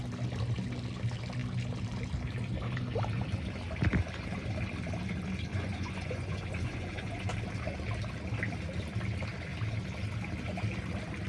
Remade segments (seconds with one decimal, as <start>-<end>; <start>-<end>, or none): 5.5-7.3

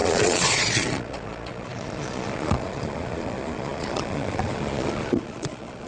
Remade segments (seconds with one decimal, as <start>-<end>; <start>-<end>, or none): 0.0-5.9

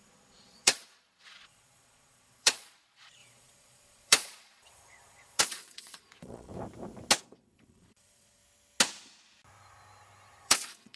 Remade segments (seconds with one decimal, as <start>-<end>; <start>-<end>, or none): 0.0-6.5; 7.2-8.4; 10.4-11.0

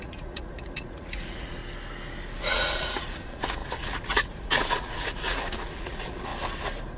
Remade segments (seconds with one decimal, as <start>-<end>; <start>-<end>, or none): 0.0-1.6; 2.4-6.3

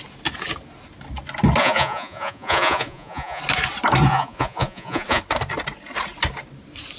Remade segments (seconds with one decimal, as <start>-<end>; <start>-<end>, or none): 1.6-3.4; 4.1-5.2

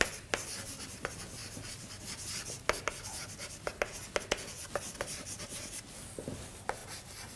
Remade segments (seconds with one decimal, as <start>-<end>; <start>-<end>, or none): none